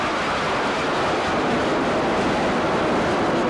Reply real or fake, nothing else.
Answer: real